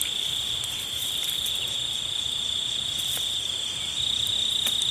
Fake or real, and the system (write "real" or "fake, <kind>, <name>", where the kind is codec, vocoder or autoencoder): fake, vocoder, BigVGAN v2